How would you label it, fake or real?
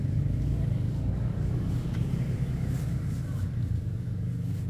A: fake